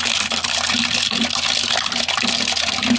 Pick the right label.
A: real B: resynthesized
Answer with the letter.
A